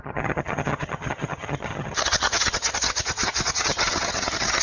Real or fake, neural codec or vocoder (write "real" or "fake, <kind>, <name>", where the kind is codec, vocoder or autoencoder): fake, vocoder, HiFi-GAN